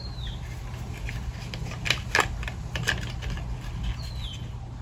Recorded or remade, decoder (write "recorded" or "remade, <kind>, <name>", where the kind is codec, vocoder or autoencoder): recorded